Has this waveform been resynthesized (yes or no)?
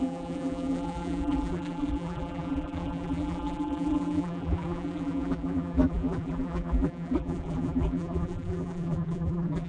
yes